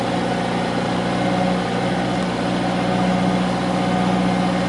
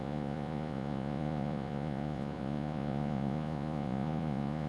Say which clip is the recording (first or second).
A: first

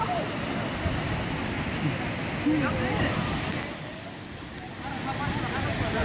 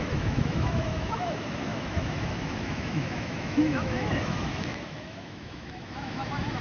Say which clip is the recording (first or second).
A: first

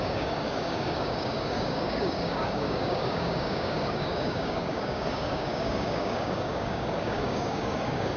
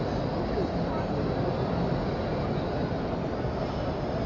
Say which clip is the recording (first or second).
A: second